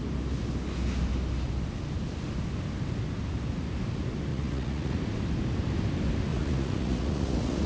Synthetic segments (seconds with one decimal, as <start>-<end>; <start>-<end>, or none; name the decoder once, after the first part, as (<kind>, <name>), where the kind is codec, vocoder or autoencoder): 4.3-5.0 (vocoder, Vocos); 6.3-7.7

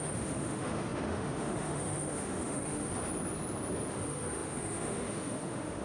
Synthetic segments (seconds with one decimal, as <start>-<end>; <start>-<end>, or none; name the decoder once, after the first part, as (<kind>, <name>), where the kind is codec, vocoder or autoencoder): 0.0-2.9 (autoencoder, DAC-VAE); 3.9-5.8

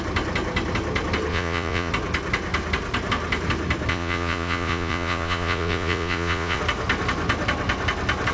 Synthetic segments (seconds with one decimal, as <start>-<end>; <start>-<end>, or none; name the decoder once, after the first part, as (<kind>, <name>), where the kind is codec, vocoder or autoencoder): 1.3-1.9 (vocoder, Vocos); 3.9-6.6

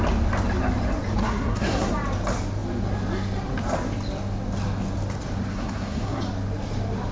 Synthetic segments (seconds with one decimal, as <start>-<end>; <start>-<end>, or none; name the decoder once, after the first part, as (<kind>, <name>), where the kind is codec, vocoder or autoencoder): 1.2-1.9 (codec, SNAC); 5.5-6.2

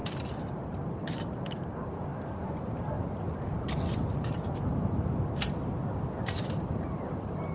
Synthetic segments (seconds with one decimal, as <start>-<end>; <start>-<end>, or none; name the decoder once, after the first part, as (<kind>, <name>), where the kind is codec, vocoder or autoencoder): 0.7-2.1 (vocoder, BigVGAN v2); 6.1-7.5

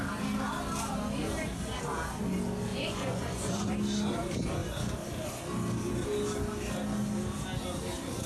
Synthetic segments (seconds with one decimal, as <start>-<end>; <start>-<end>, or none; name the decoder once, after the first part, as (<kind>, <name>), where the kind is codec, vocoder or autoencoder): 2.7-3.7 (vocoder, Vocos)

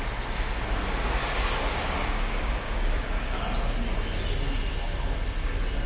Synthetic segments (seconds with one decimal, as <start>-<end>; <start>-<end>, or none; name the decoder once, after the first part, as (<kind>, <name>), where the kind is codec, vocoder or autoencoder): 1.2-3.4 (codec, DAC)